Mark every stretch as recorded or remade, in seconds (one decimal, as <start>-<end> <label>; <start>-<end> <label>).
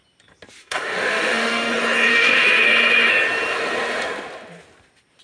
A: 0.0-0.6 recorded; 0.6-1.7 remade; 1.7-2.1 recorded; 2.1-2.7 remade; 2.7-5.2 recorded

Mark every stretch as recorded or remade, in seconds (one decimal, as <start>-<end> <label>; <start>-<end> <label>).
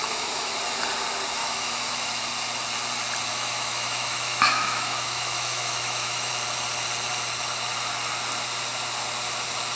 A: 0.0-0.6 remade; 0.6-1.4 recorded; 1.4-2.1 remade; 2.1-3.3 recorded; 3.3-6.3 remade; 6.3-9.8 recorded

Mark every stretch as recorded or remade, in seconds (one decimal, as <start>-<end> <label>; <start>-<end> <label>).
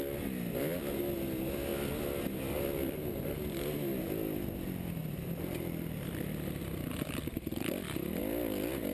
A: 0.0-8.9 recorded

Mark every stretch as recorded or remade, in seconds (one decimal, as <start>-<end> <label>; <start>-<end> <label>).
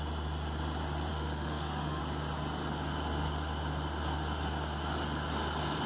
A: 0.0-1.1 recorded; 1.1-2.0 remade; 2.0-5.9 recorded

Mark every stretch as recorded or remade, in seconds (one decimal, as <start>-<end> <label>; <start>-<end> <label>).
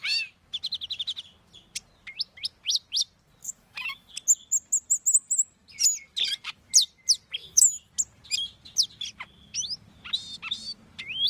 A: 0.0-3.4 recorded; 3.4-4.1 remade; 4.1-7.4 recorded; 7.4-7.9 remade; 7.9-11.3 recorded